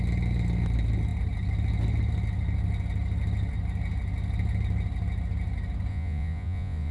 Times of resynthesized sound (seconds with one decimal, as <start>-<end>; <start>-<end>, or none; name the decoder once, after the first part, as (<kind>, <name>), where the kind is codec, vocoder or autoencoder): 5.9-6.9 (vocoder, Vocos)